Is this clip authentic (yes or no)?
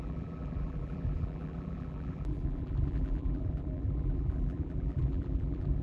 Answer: no